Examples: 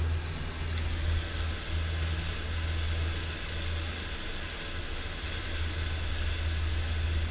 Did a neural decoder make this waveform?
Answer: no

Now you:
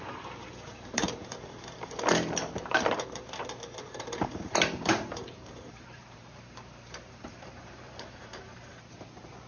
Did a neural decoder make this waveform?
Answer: yes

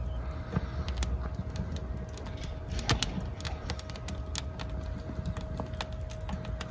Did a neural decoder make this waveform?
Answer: no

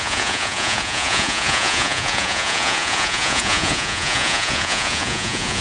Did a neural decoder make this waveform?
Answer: yes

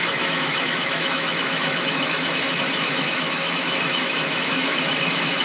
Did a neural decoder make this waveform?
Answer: yes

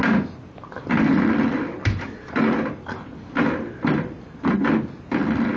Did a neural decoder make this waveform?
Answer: no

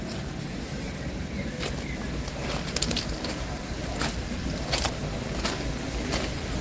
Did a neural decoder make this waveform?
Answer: no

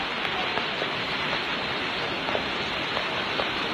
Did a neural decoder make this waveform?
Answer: no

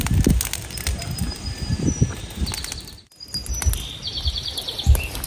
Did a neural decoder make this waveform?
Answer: no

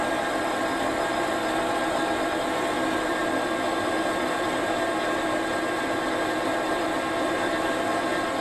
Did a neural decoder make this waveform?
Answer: no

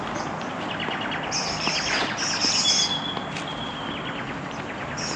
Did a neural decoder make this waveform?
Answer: no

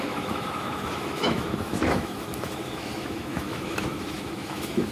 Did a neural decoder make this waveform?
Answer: yes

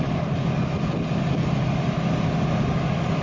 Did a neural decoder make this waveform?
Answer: no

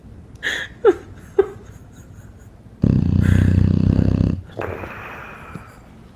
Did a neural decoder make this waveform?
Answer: no